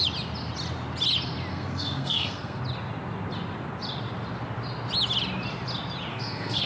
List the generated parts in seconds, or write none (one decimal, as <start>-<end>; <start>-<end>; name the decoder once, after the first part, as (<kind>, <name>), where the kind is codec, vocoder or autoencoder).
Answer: 1.5-2.6 (codec, SNAC); 6.1-6.7